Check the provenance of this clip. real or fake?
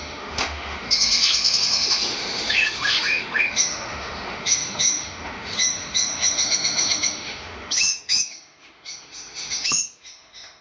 fake